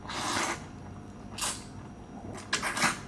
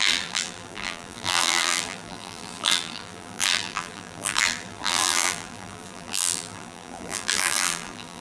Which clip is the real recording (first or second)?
first